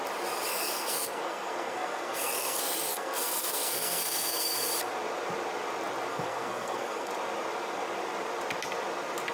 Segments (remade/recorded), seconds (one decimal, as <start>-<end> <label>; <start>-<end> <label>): 0.0-0.5 recorded; 0.5-4.7 remade; 4.7-6.1 recorded; 6.1-7.1 remade; 7.1-9.3 recorded